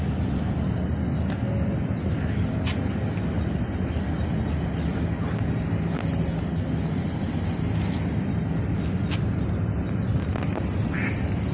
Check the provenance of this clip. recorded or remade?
recorded